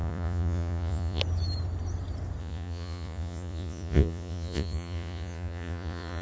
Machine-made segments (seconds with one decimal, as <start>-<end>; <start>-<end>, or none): 0.0-1.2; 2.4-6.2